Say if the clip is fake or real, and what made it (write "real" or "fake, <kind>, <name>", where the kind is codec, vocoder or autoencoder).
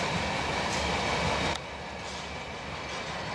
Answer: real